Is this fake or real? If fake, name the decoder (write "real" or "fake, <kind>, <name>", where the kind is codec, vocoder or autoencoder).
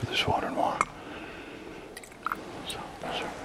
real